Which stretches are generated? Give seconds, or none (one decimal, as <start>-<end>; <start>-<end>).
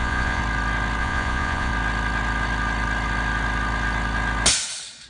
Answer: 0.0-0.4; 1.0-1.7